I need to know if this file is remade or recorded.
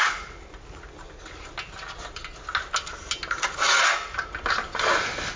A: recorded